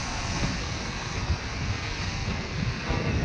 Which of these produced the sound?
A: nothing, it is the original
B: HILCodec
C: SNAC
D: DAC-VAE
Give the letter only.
C